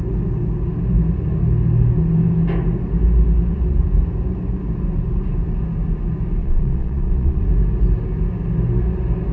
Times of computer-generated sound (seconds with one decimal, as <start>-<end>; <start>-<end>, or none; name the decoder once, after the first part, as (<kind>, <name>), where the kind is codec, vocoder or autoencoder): 6.4-7.4 (vocoder, Vocos)